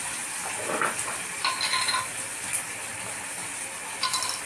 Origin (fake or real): real